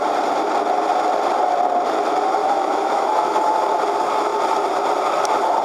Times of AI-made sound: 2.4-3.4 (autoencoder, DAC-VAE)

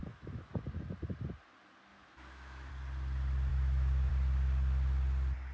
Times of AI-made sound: 0.0-0.5 (autoencoder, DAC-VAE); 1.9-2.7; 3.5-4.1

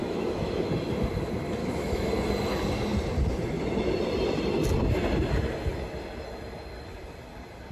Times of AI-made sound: 0.0-0.7 (autoencoder, DAC-VAE); 1.6-2.1